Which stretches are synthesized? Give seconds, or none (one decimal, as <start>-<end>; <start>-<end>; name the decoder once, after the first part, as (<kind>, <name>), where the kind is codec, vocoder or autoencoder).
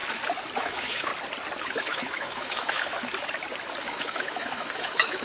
0.6-1.1 (autoencoder, DAC-VAE); 1.6-3.1; 3.8-5.2